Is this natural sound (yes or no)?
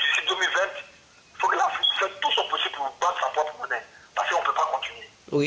yes